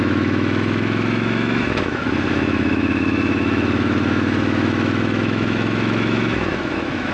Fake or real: fake